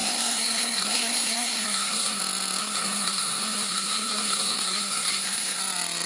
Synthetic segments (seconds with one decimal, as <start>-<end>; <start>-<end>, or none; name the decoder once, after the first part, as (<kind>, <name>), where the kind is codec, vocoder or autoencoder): 0.0-2.2 (codec, SNAC); 2.6-5.6

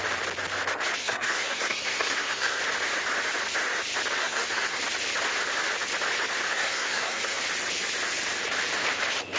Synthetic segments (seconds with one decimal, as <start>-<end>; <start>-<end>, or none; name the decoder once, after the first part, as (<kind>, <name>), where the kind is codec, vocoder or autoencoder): 1.0-2.6 (codec, SNAC); 4.2-4.8; 6.5-7.4

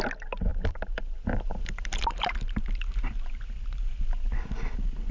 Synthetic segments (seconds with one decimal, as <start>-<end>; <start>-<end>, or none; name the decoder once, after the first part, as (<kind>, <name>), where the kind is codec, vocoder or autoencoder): 0.5-2.6 (vocoder, BigVGAN v2)

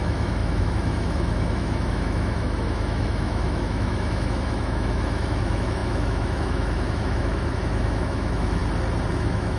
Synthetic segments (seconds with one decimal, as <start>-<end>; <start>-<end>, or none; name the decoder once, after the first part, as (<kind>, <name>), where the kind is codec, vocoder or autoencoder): 0.0-8.6 (autoencoder, DAC-VAE); 9.1-9.6